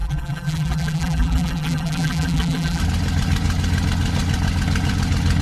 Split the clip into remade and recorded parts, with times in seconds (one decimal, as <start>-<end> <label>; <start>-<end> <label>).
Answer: 0.0-2.8 remade; 2.8-5.4 recorded

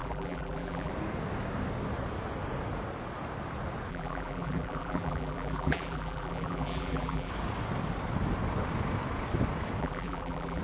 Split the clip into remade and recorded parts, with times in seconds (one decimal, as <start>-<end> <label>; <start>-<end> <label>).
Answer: 0.0-0.9 remade; 0.9-3.9 recorded; 3.9-7.3 remade; 7.3-9.8 recorded; 9.8-10.6 remade